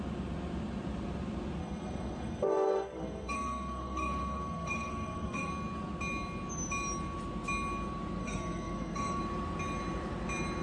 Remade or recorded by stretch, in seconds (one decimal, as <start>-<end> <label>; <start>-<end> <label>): 0.0-1.6 recorded; 1.6-5.5 remade; 5.5-8.2 recorded; 8.2-9.2 remade; 9.2-10.6 recorded